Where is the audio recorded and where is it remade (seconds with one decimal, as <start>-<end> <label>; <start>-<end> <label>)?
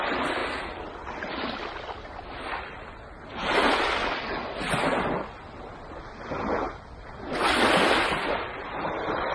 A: 0.0-9.3 recorded